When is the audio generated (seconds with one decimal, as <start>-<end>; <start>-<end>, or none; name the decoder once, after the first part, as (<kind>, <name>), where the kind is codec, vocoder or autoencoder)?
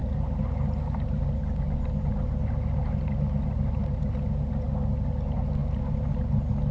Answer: none